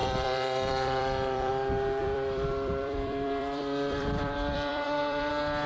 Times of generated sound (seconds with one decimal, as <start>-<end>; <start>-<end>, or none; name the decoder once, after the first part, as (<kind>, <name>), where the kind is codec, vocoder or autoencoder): 0.0-1.5 (vocoder, BigVGAN v2); 2.0-5.3